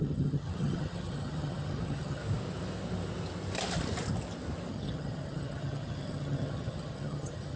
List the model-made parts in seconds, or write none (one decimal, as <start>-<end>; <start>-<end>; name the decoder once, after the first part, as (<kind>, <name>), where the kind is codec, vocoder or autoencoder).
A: 0.0-2.2 (vocoder, HiFi-GAN); 4.7-7.6